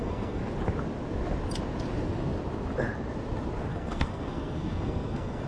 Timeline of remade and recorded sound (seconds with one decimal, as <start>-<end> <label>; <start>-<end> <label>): 0.0-0.4 remade; 0.4-3.7 recorded; 3.7-5.5 remade